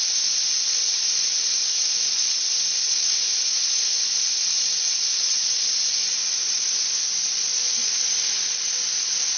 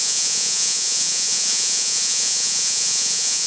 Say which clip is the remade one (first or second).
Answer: second